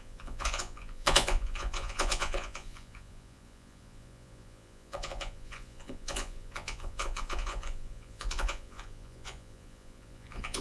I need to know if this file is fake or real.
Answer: fake